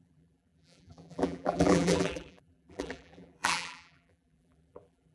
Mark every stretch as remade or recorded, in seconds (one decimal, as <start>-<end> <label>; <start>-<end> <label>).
0.0-5.1 remade